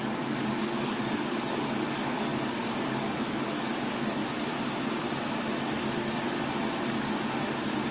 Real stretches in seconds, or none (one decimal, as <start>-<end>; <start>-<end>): 4.2-7.9